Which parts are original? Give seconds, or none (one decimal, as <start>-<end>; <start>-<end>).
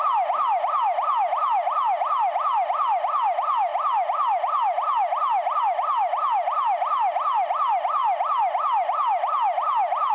0.0-10.1